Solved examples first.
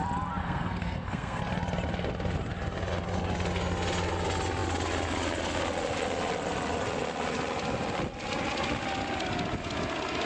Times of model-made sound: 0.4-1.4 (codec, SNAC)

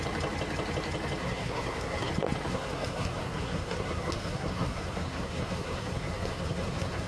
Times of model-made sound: 1.2-2.1 (codec, SNAC); 2.5-7.1